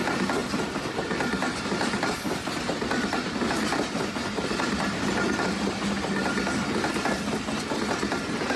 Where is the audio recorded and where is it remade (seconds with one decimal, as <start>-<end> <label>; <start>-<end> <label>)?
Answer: 0.0-8.6 recorded